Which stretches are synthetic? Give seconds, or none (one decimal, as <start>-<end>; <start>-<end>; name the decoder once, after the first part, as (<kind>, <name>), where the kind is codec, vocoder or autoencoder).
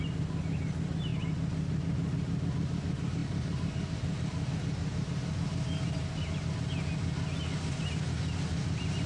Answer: none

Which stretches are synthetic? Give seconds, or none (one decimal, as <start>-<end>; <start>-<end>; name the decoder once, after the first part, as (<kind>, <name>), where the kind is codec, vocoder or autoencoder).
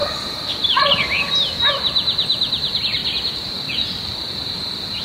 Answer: 3.0-5.0 (vocoder, BigVGAN v2)